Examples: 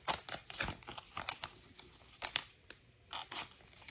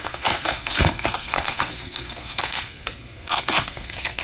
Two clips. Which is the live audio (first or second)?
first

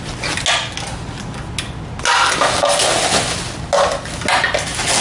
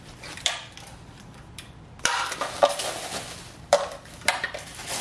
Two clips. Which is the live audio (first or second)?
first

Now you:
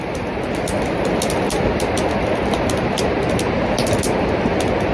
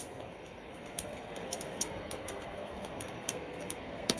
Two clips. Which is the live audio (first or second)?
first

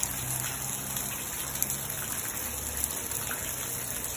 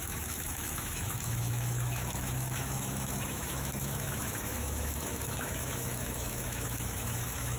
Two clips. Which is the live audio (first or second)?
first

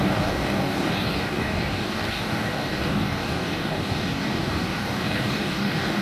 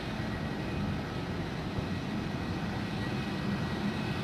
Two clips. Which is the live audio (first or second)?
second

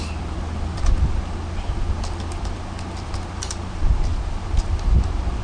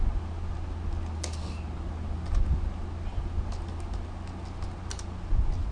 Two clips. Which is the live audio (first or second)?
second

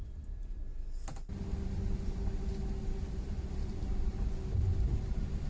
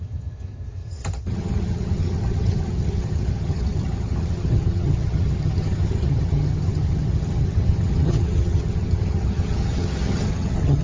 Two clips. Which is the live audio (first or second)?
first